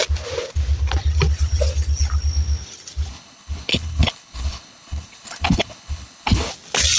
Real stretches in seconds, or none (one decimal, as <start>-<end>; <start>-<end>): 0.0-3.1; 6.5-7.0

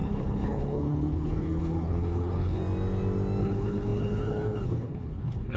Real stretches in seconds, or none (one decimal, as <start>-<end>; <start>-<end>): 2.6-3.4

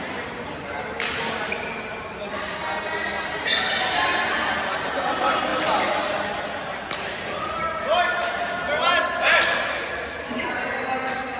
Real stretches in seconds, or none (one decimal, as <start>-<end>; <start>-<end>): 0.0-11.4

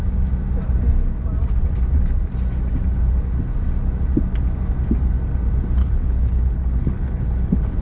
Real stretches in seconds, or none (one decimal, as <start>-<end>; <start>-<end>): 0.0-5.8

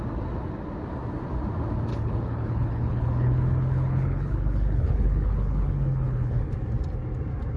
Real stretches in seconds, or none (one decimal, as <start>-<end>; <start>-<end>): 0.0-1.9; 6.5-7.6

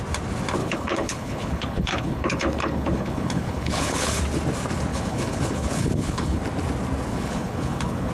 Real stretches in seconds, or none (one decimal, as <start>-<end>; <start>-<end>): 0.0-0.6; 4.2-4.9; 6.4-7.1